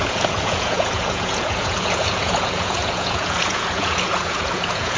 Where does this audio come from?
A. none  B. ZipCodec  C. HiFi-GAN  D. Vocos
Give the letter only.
D